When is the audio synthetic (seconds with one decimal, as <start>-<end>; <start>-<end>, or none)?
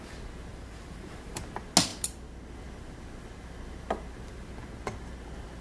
0.5-1.4